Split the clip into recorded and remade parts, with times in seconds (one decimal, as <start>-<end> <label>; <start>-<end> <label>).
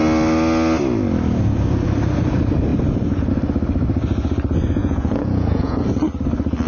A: 0.0-4.8 recorded; 4.8-5.8 remade; 5.8-6.7 recorded